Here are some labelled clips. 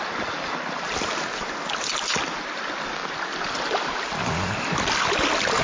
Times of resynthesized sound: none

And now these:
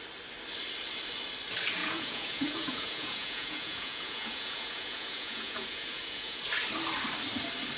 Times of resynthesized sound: 1.8-6.4 (vocoder, Vocos)

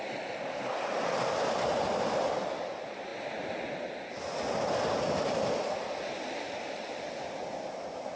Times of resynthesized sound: none

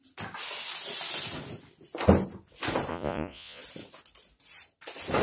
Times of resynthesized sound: 2.9-3.6 (vocoder, Vocos)